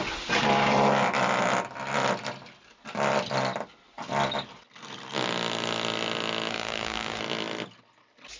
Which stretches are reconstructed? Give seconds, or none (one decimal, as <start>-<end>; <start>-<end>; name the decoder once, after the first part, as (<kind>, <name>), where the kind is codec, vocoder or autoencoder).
6.5-7.2 (codec, DAC)

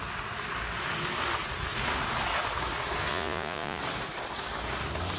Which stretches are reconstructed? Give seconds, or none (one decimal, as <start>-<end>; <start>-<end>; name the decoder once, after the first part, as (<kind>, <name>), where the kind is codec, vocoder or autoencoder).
3.1-3.8 (vocoder, Vocos)

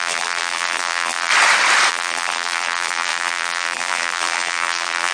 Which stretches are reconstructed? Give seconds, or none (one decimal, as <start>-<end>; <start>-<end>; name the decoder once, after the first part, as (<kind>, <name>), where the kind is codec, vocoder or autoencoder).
0.0-1.3 (vocoder, BigVGAN v2); 1.9-5.1

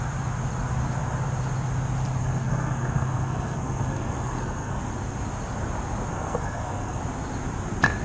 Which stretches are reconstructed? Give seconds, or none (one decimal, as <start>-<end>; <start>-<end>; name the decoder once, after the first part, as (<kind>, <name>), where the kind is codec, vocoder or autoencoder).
2.2-4.8 (codec, SNAC); 6.1-7.0

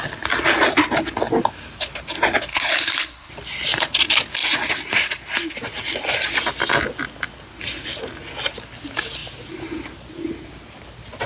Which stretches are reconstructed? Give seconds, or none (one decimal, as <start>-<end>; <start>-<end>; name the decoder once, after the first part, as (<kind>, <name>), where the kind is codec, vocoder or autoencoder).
2.5-3.3 (codec, HILCodec)